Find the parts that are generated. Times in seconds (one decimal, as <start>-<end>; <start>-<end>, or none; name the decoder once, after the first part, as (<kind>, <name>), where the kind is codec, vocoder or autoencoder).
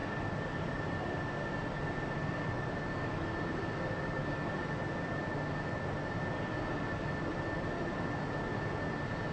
none